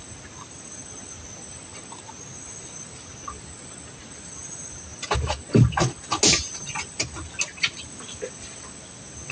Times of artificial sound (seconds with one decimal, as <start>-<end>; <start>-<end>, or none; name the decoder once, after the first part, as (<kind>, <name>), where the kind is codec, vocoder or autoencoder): none